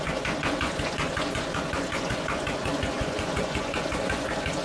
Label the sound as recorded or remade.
remade